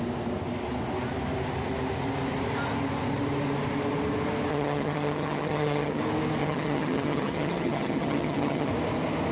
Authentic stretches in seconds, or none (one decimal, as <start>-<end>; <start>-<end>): 0.0-4.5; 6.0-6.4; 8.7-9.3